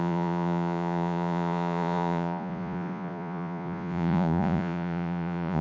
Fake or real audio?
fake